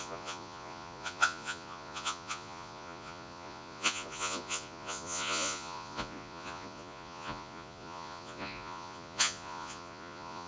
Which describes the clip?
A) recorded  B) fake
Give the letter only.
B